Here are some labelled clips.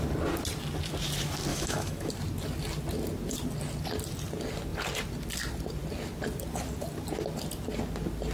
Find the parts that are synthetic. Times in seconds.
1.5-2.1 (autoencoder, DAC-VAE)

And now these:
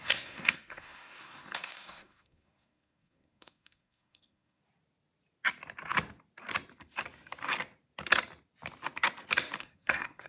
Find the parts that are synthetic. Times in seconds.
0.0-4.6 (codec, SNAC); 9.6-10.3

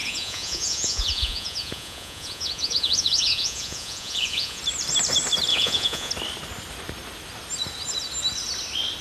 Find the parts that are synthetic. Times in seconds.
0.0-4.6 (vocoder, Vocos); 5.5-6.1

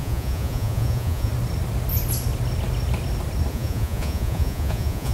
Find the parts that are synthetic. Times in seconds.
0.0-1.3 (vocoder, Vocos); 3.5-5.1

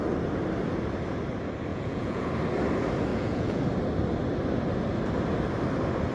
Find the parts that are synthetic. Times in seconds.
1.7-2.3 (vocoder, Vocos); 3.1-3.6

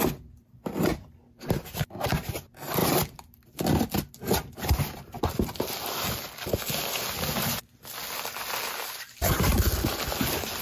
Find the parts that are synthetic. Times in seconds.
none

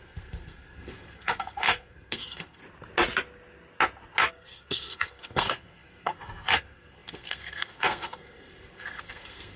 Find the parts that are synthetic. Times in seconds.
0.0-2.6 (codec, SNAC); 4.3-9.6

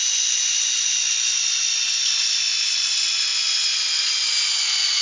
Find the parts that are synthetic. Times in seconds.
none